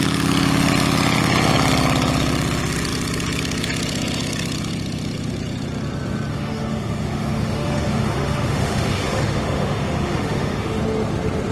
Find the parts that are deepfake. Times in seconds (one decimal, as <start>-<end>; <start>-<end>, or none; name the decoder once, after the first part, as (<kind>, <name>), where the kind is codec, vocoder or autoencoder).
6.3-10.8 (autoencoder, DAC-VAE)